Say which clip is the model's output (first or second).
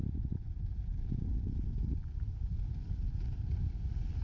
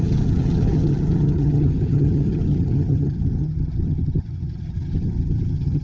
second